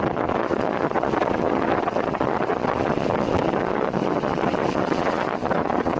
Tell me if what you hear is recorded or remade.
remade